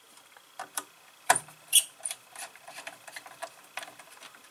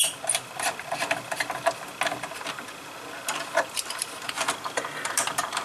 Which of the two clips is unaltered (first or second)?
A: second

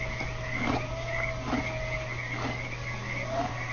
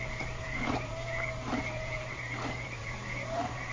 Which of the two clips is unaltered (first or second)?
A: first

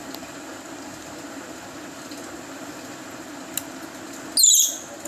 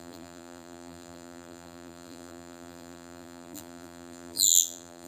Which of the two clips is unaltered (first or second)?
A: first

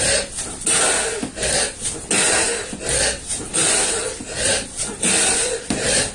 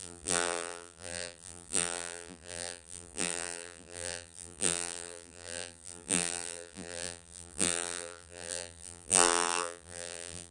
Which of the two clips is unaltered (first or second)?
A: first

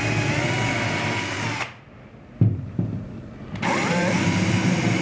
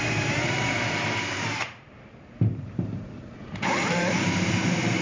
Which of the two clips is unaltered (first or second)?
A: first